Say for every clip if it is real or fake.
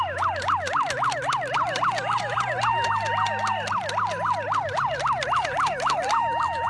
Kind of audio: real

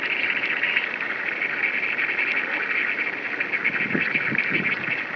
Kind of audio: real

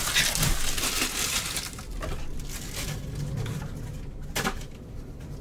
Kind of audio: real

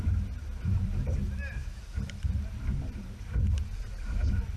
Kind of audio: fake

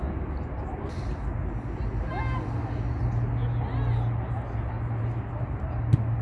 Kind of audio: real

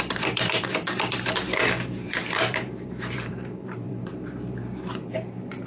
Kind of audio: fake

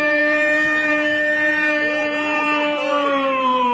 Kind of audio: fake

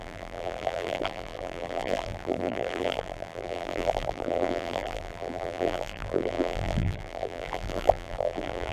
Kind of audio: fake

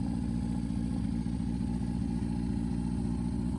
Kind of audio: real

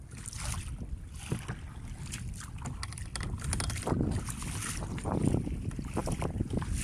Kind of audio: real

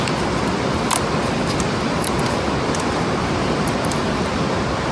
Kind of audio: fake